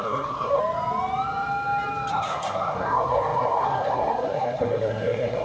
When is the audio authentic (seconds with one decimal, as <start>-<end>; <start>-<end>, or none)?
0.6-2.1